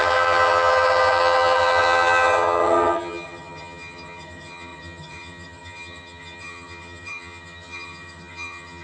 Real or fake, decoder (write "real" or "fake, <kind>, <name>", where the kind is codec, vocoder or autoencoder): fake, vocoder, HiFi-GAN